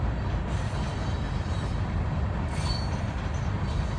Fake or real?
real